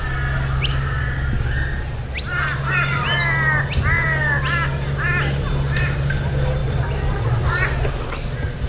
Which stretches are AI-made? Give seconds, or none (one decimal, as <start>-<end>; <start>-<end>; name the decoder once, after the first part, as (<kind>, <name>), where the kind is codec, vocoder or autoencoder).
6.6-7.9 (vocoder, BigVGAN v2)